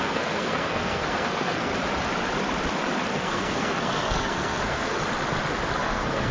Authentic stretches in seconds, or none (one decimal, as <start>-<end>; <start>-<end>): 1.7-3.1; 5.0-5.8